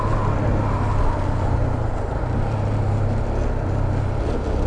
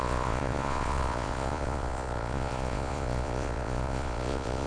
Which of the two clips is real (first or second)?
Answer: first